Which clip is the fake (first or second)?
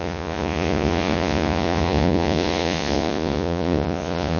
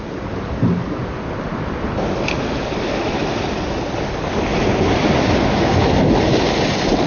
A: first